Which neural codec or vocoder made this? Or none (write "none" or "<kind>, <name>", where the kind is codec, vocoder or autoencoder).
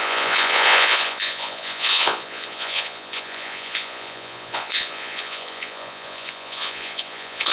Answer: vocoder, Vocos